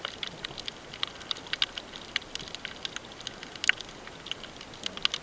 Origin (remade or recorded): recorded